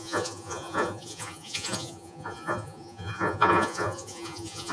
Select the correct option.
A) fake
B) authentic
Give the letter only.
A